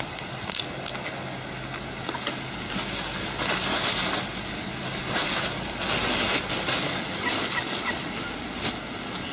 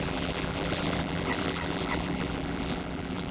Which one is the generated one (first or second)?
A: second